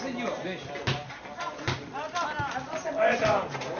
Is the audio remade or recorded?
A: recorded